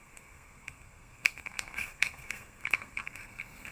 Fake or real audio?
fake